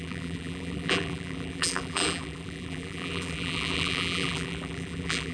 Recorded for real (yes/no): no